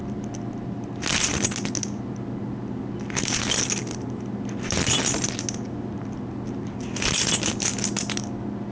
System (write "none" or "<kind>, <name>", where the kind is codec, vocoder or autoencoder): none